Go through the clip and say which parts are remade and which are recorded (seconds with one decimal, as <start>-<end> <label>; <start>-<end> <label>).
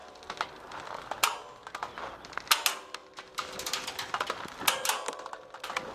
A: 0.0-5.9 recorded